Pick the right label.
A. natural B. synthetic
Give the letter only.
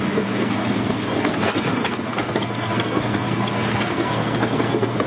B